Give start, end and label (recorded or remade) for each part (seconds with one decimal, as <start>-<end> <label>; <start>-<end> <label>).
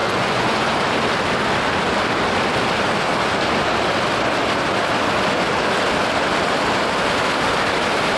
0.0-0.7 remade; 0.7-8.2 recorded